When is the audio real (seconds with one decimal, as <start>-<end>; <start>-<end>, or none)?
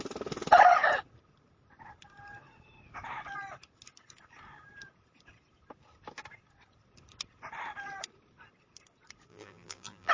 0.0-9.3